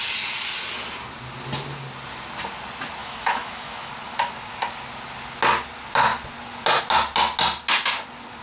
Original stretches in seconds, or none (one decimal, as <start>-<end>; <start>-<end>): 0.0-3.0; 3.9-8.4